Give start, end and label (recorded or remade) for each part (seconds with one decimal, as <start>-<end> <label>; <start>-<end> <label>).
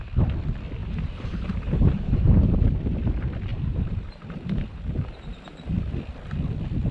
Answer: 0.0-0.8 recorded; 0.8-2.7 remade; 2.7-3.5 recorded; 3.5-5.2 remade; 5.2-6.9 recorded